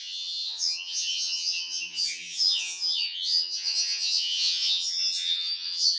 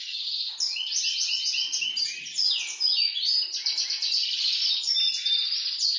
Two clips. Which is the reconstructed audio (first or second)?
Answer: first